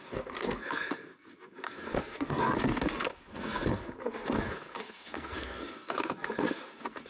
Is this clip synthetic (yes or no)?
yes